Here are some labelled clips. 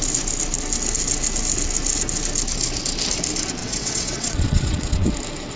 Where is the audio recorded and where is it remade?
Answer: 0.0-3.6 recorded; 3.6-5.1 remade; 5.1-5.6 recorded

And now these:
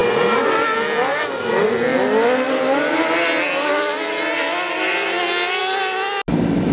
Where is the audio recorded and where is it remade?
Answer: 0.0-6.7 recorded

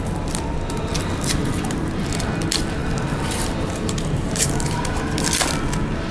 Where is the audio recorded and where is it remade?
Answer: 0.0-1.4 recorded; 1.4-2.0 remade; 2.0-2.8 recorded; 2.8-5.2 remade; 5.2-6.1 recorded

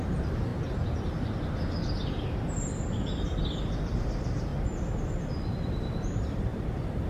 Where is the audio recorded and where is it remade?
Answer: 0.0-0.5 remade; 0.5-4.0 recorded; 4.0-4.5 remade; 4.5-5.4 recorded; 5.4-7.1 remade

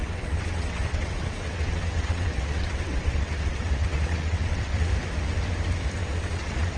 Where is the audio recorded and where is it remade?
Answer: 0.0-4.9 remade; 4.9-6.0 recorded; 6.0-6.8 remade

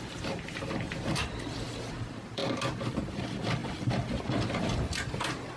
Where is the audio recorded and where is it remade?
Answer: 0.0-2.4 remade; 2.4-3.0 recorded; 3.0-5.6 remade

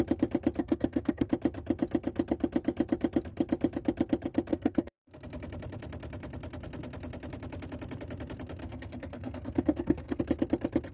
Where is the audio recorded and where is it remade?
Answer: 0.0-0.6 recorded; 0.6-1.3 remade; 1.3-4.5 recorded; 4.5-5.1 remade; 5.1-8.6 recorded; 8.6-10.2 remade; 10.2-10.9 recorded

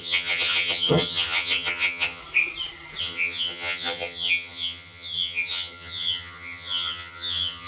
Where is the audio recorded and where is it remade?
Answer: 0.0-2.2 remade; 2.2-3.0 recorded; 3.0-7.7 remade